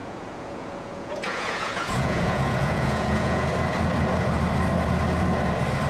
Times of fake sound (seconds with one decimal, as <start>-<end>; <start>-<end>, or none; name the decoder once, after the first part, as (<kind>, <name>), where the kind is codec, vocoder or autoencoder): 0.0-3.5 (vocoder, Vocos)